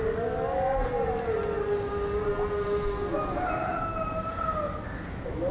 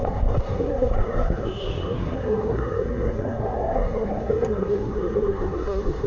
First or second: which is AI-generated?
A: second